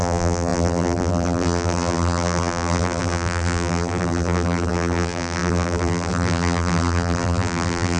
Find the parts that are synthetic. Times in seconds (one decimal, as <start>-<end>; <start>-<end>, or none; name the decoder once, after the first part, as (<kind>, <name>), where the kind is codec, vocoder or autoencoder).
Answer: 0.0-8.0 (vocoder, BigVGAN v2)